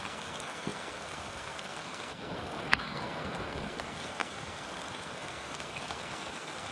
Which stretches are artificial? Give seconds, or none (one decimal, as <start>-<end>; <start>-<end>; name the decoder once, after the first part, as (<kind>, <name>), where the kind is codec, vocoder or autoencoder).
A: 0.0-6.7 (codec, SNAC)

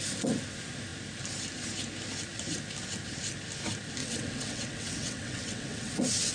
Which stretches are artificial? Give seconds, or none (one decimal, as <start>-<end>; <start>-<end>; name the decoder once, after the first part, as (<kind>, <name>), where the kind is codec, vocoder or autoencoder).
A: 4.0-6.3 (vocoder, WaveNeXt)

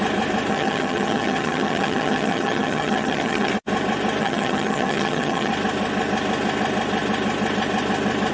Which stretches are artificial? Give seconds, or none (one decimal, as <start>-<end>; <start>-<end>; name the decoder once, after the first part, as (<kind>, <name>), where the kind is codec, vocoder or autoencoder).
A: 0.5-3.5 (vocoder, HiFi-GAN); 4.2-5.5

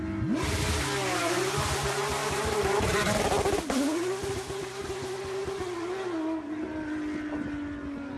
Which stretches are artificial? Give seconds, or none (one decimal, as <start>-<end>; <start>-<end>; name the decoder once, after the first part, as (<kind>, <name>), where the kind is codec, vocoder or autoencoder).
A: 2.2-3.2 (vocoder, BigVGAN v2)

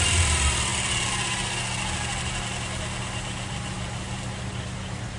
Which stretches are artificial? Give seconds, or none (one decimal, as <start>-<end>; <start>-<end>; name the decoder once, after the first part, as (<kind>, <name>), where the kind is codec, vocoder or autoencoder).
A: none

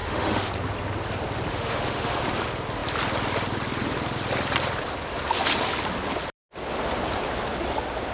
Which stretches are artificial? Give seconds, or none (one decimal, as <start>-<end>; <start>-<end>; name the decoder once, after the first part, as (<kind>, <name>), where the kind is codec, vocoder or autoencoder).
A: 0.0-0.5 (autoencoder, DAC-VAE); 1.5-2.2